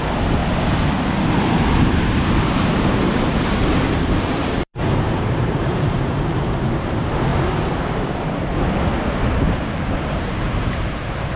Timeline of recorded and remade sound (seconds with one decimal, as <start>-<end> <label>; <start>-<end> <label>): 0.0-0.4 remade; 0.4-1.8 recorded; 1.8-3.6 remade; 3.6-4.1 recorded; 4.1-7.3 remade; 7.3-9.2 recorded; 9.2-11.4 remade